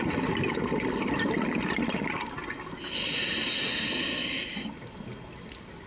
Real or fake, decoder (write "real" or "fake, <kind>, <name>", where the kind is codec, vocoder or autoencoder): real